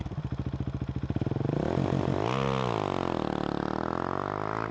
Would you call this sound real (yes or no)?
yes